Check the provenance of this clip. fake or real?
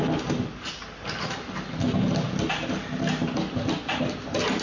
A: real